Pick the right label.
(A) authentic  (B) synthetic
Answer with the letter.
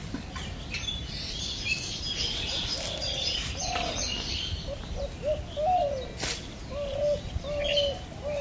A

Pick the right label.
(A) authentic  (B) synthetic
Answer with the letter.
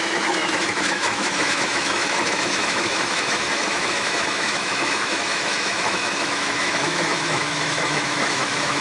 B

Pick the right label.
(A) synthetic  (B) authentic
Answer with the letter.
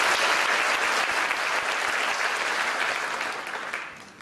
B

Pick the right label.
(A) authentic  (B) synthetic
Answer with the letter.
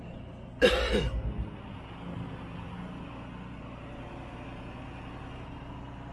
A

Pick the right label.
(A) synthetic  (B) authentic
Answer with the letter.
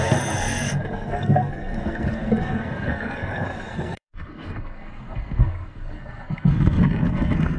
A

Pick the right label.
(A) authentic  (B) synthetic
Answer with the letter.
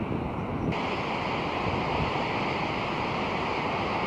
A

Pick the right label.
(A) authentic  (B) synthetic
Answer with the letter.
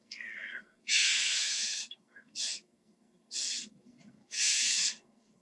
B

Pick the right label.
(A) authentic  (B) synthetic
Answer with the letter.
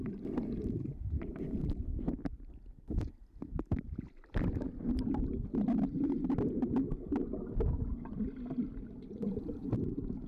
B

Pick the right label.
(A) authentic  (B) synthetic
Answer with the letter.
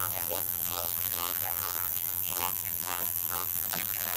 B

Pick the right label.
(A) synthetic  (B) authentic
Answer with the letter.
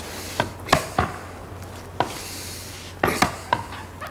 B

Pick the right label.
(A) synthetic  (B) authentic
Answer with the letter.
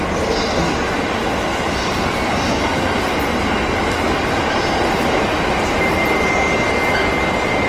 B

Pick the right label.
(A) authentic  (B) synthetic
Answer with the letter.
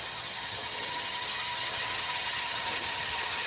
B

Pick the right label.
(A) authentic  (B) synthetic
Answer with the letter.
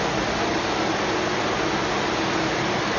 A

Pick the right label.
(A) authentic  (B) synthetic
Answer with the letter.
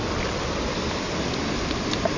A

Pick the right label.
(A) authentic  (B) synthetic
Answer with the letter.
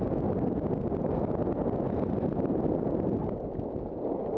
A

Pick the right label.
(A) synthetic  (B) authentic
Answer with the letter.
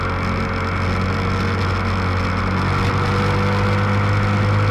B